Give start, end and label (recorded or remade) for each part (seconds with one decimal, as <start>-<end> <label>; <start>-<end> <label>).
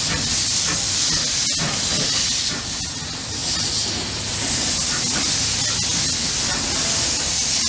0.0-7.7 recorded